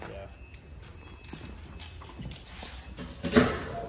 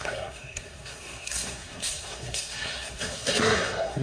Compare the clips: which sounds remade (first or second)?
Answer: second